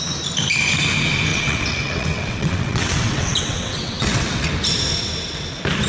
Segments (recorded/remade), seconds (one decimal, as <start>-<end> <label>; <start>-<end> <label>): 0.0-1.3 recorded; 1.3-4.5 remade; 4.5-5.9 recorded